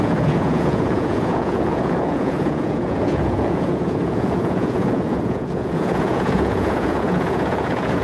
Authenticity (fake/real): fake